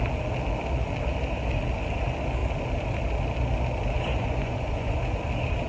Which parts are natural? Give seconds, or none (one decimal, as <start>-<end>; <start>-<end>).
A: 0.0-4.1; 5.0-5.7